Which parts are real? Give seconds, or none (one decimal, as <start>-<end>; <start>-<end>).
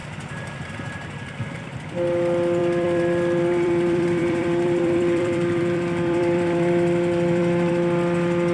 0.0-2.6; 7.7-8.5